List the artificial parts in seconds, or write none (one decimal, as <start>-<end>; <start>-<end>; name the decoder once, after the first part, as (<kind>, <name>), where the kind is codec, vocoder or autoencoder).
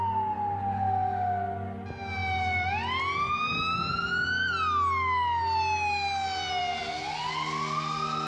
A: none